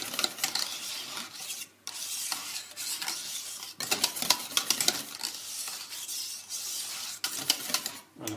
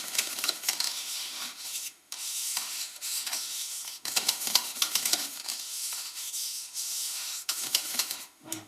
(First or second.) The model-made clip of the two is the second